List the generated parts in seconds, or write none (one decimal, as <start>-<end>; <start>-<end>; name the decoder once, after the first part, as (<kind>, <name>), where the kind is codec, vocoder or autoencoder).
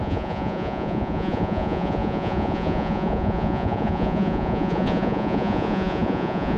0.0-6.6 (vocoder, Vocos)